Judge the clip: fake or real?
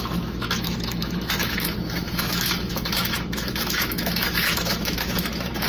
fake